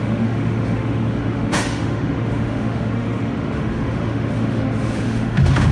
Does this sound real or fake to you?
fake